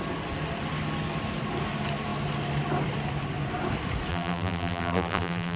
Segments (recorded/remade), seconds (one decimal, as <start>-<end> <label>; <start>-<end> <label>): 0.0-4.1 recorded; 4.1-5.6 remade